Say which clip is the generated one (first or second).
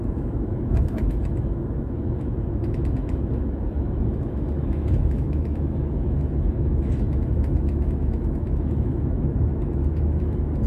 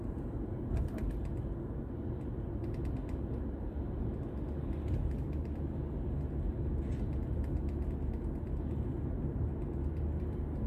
first